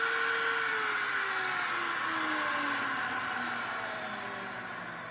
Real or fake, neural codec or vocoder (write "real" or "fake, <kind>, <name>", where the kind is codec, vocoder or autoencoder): real